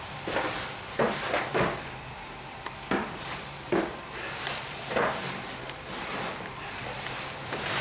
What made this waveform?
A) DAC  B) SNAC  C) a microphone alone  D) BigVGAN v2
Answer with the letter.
D